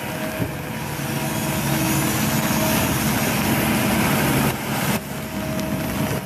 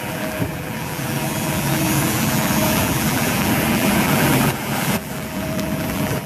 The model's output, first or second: second